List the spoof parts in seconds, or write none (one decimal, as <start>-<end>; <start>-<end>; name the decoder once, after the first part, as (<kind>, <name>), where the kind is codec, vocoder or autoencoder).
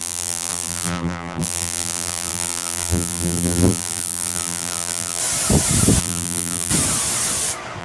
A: 0.0-5.2 (vocoder, BigVGAN v2); 6.0-6.7